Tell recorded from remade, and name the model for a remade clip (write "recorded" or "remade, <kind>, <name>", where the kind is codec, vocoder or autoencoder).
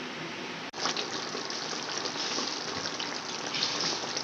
recorded